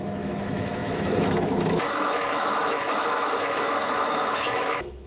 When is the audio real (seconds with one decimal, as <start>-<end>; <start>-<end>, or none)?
none